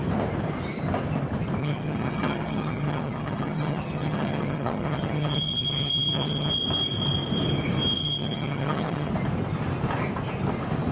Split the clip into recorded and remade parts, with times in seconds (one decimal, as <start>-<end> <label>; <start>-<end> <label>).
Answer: 0.0-1.6 recorded; 1.6-6.5 remade; 6.5-8.0 recorded; 8.0-9.1 remade; 9.1-10.9 recorded